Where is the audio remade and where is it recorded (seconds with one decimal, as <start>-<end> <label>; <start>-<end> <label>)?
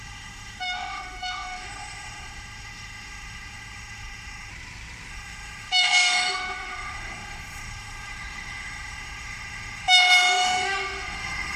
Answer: 0.0-4.5 remade; 4.5-5.1 recorded; 5.1-11.6 remade